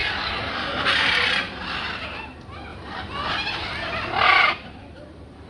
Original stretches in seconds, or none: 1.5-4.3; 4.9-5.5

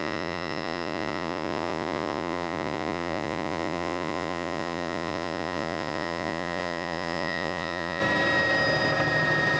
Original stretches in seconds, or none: 8.0-9.6

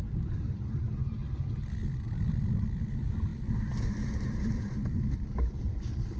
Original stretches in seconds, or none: 1.2-2.9

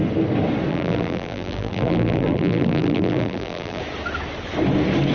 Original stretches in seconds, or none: 0.0-0.7; 3.8-5.1

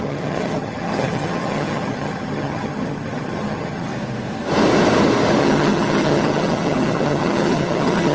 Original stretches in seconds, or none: 3.9-5.4

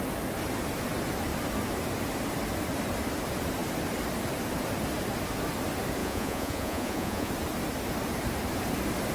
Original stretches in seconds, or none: 0.0-6.0; 7.3-9.1